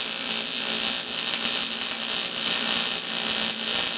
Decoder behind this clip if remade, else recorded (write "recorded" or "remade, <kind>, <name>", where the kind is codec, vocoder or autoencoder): recorded